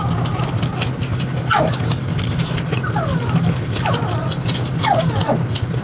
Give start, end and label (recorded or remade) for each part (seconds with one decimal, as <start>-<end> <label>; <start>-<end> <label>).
0.0-5.8 recorded